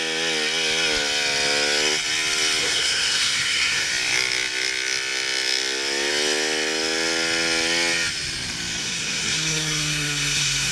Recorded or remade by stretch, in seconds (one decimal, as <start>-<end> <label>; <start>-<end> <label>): 0.0-2.6 recorded; 2.6-3.9 remade; 3.9-8.8 recorded; 8.8-10.7 remade